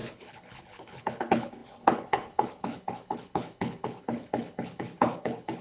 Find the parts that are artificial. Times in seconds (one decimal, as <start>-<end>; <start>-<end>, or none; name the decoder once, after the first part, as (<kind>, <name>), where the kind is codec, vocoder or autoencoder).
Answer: 0.0-5.6 (codec, HILCodec)